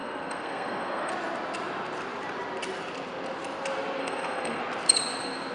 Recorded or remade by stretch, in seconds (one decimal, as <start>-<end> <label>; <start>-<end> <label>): 0.0-1.1 remade; 1.1-4.0 recorded; 4.0-4.6 remade; 4.6-5.5 recorded